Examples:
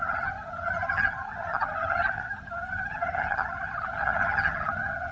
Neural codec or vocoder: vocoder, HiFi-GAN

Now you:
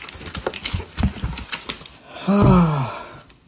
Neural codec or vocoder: none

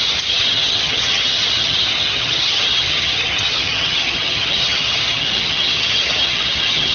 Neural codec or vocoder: vocoder, HiFi-GAN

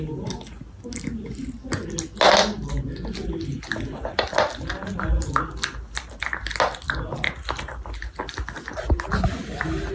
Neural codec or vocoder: none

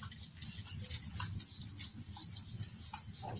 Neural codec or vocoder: none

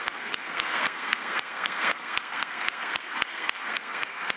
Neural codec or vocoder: codec, SNAC